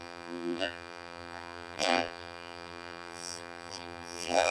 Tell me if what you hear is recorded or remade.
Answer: remade